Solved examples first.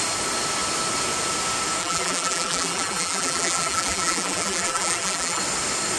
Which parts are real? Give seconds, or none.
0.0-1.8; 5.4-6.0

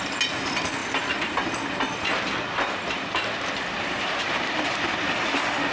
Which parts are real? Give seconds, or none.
0.0-5.7